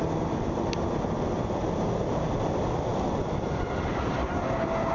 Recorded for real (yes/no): yes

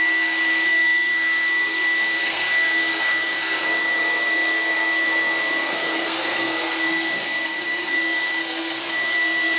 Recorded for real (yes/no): no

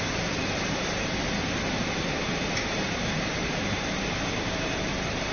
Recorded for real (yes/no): no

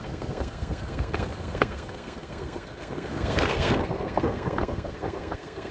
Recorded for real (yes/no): no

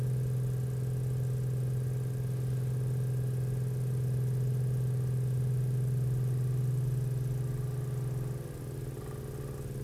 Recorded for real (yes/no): yes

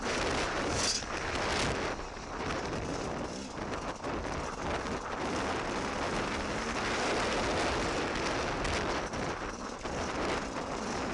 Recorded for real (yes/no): yes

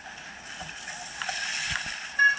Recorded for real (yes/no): yes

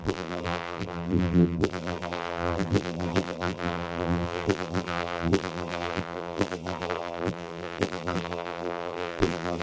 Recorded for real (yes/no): no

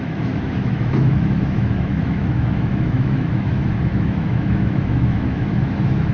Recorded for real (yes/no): no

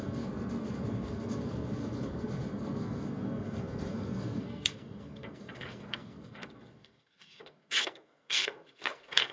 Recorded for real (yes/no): no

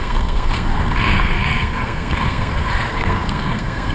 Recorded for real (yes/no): no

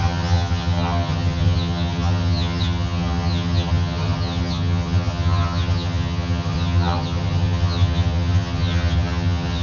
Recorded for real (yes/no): no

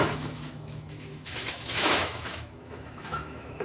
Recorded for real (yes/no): no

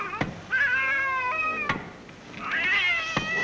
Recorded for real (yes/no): yes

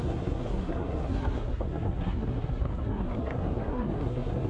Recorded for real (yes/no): no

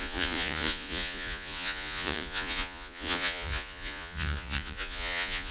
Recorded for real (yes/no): no